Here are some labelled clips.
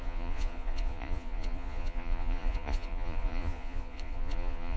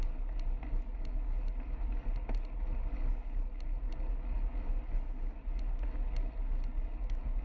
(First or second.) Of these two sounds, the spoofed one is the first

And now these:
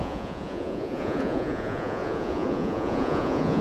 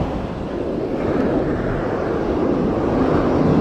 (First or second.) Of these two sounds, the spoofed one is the first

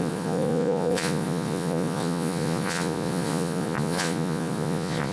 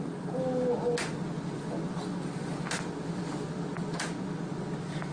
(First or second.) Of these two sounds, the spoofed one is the first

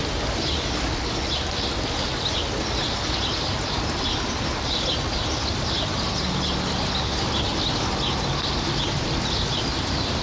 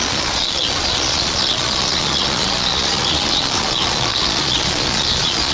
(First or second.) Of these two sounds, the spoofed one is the second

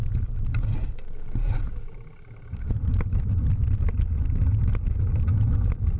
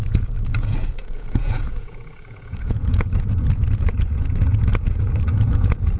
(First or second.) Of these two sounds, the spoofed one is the second